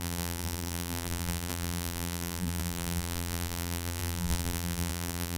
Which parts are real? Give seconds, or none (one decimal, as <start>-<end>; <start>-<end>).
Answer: none